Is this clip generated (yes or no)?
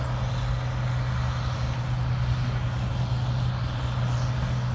no